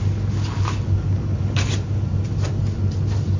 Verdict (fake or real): real